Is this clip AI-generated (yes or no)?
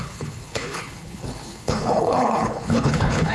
yes